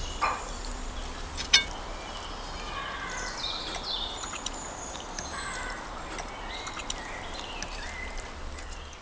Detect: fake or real real